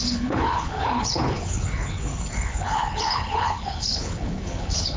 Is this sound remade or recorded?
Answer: remade